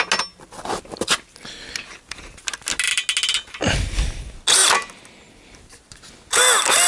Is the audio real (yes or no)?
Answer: yes